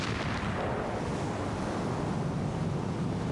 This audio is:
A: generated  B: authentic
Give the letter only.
B